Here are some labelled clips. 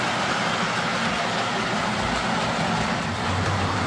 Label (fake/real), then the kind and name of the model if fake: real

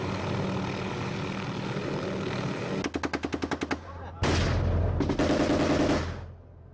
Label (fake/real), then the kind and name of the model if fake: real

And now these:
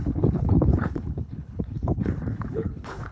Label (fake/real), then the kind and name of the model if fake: fake, codec, HILCodec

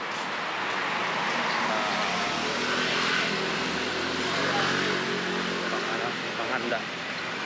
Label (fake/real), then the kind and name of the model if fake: real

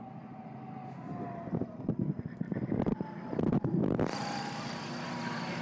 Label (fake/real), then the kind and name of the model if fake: real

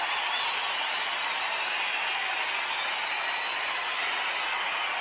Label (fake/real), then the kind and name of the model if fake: real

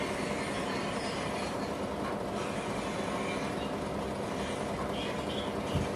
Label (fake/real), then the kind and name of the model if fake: real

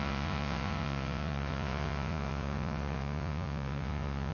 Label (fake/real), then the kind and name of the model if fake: fake, vocoder, Vocos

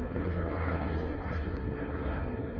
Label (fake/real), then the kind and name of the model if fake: fake, codec, SNAC